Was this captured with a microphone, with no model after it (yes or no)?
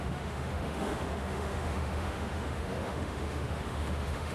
no